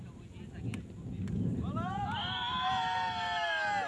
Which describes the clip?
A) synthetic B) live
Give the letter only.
B